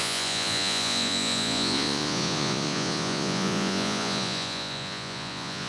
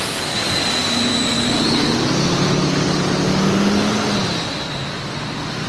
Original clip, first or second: second